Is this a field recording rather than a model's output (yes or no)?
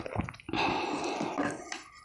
yes